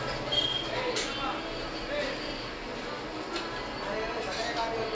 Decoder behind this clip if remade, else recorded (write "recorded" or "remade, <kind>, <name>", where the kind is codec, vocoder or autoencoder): recorded